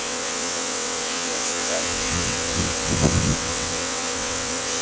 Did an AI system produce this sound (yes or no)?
yes